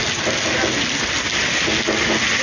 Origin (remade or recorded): recorded